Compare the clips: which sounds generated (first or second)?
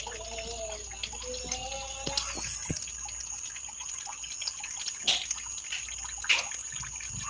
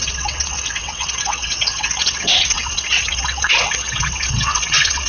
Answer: second